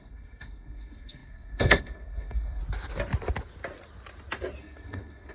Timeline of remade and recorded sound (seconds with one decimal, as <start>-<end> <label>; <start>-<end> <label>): 0.0-2.6 remade; 2.6-4.6 recorded; 4.6-5.3 remade